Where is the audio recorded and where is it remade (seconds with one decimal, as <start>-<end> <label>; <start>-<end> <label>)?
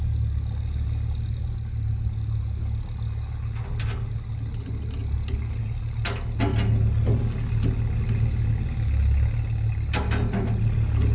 0.0-11.1 recorded